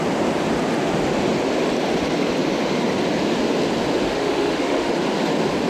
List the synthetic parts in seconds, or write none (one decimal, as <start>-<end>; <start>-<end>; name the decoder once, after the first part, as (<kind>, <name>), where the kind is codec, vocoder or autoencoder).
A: 4.2-4.9 (autoencoder, DAC-VAE)